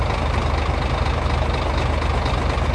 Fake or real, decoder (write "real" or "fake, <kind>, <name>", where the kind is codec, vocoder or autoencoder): real